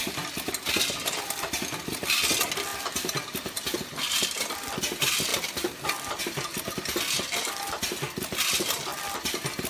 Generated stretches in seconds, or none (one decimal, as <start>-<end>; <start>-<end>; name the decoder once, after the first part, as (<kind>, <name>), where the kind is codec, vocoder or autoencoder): none